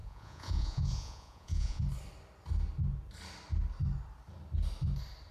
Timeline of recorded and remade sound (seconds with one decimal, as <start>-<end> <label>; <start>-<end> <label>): 0.0-1.8 remade; 1.8-5.3 recorded